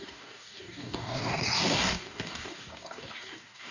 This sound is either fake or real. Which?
fake